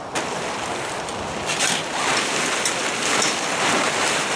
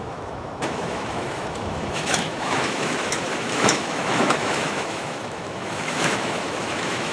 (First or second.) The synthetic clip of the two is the second